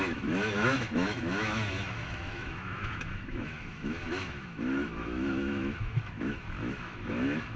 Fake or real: fake